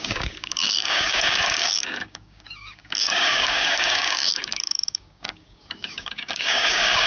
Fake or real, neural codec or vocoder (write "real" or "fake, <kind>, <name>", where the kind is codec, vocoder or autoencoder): fake, codec, DAC